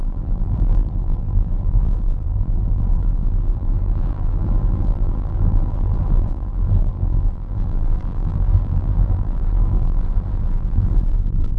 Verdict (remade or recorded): remade